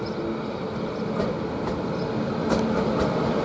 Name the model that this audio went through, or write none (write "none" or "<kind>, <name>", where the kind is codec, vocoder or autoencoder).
none